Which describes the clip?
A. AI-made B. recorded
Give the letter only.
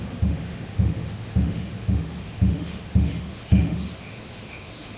A